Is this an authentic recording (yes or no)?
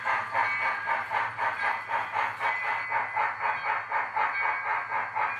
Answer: yes